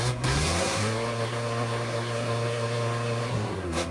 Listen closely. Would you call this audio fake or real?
fake